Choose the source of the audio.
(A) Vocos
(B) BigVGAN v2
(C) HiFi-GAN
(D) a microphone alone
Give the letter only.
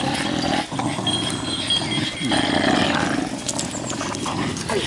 D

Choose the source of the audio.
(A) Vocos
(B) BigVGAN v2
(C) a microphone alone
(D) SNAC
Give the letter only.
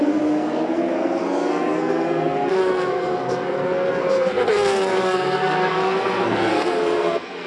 D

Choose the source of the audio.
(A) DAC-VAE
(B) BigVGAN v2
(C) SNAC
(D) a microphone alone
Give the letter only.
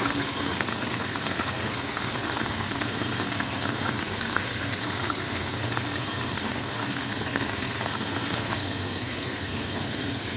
C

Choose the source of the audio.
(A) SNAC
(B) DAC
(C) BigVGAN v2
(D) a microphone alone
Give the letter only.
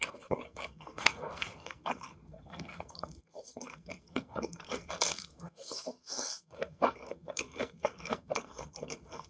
A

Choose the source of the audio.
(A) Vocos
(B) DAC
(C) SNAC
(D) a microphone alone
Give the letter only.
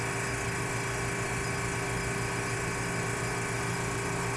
D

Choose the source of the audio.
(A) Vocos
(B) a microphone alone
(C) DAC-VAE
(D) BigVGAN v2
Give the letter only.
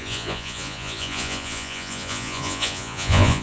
A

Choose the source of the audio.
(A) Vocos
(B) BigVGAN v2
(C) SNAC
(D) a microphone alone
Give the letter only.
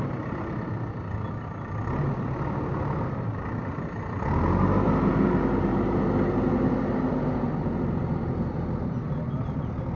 D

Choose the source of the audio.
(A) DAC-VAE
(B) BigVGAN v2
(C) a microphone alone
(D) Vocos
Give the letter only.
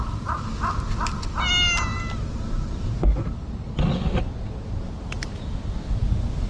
C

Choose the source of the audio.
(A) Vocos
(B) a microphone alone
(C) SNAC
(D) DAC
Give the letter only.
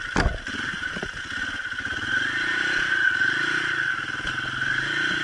B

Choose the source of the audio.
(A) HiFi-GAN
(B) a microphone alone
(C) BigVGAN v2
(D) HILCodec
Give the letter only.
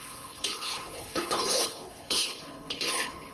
D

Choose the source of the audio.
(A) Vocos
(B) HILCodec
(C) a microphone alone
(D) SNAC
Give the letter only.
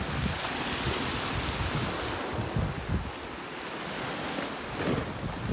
C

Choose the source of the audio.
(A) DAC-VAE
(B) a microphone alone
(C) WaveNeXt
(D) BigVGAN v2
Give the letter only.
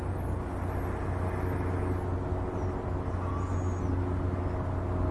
B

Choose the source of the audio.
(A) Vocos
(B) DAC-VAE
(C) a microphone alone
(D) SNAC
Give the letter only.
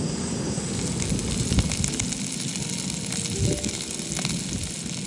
C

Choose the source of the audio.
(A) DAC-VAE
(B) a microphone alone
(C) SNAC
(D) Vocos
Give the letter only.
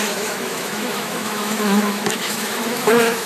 A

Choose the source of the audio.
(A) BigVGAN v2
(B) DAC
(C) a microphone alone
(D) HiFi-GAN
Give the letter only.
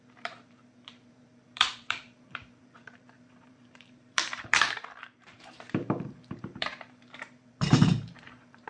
A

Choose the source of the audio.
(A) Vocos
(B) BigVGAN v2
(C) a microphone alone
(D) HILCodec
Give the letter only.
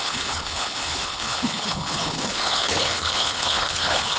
D